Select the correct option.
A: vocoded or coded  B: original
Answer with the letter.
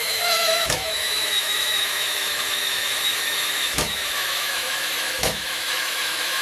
A